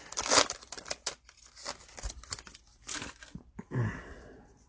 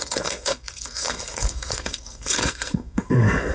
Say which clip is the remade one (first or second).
second